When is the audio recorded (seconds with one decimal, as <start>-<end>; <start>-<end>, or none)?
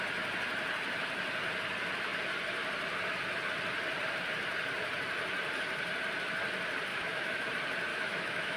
0.0-6.9; 7.5-7.9